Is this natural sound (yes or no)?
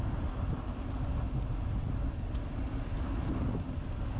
yes